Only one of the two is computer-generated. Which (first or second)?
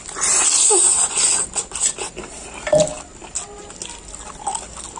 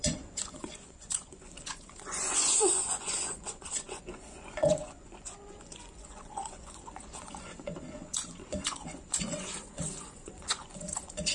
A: second